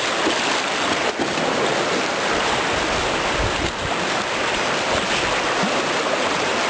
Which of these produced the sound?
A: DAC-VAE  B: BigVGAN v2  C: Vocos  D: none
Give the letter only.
D